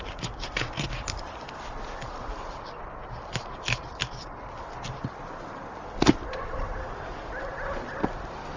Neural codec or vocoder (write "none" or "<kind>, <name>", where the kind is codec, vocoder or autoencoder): none